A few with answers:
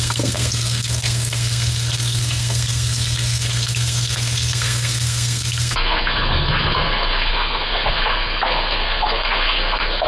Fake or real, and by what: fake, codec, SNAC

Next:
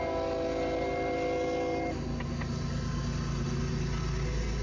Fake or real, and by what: real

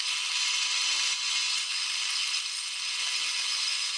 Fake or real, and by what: real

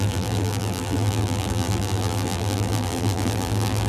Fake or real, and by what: fake, vocoder, BigVGAN v2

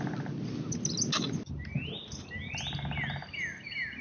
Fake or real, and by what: real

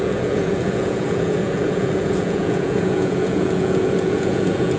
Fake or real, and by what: fake, vocoder, Vocos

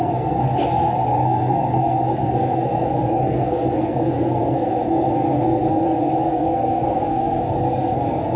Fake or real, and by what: fake, codec, SNAC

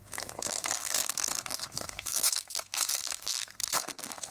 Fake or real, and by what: fake, codec, SNAC